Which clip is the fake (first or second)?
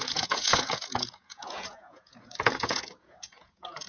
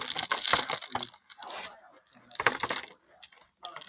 first